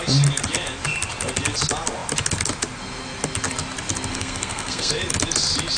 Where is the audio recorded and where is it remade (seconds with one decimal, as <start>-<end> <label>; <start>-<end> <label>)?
0.0-4.1 recorded; 4.1-4.9 remade; 4.9-5.8 recorded